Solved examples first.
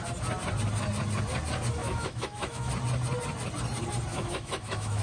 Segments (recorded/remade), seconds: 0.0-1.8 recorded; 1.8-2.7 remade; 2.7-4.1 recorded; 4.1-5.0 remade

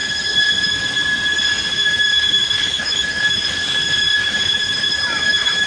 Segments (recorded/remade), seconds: 0.0-0.6 recorded; 0.6-1.0 remade; 1.0-1.7 recorded; 1.7-5.7 remade

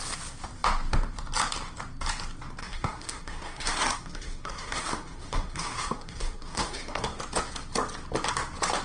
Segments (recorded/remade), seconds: 0.0-2.6 recorded; 2.6-7.2 remade; 7.2-8.8 recorded

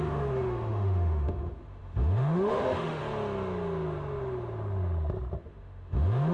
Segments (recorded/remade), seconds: 0.0-3.0 remade; 3.0-5.4 recorded; 5.4-6.3 remade